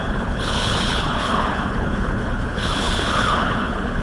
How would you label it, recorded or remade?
remade